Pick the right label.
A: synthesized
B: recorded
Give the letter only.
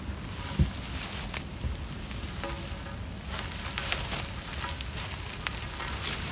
B